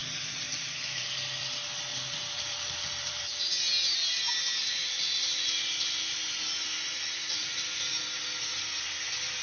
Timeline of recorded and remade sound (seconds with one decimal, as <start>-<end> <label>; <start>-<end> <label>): 0.0-1.9 recorded; 1.9-3.4 remade; 3.4-4.6 recorded; 4.6-6.2 remade; 6.2-7.2 recorded; 7.2-8.8 remade; 8.8-9.4 recorded